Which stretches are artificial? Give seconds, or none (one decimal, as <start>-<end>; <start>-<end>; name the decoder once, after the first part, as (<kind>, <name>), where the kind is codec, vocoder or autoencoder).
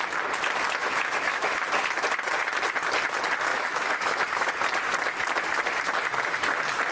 0.8-1.6 (autoencoder, DAC-VAE); 3.5-4.5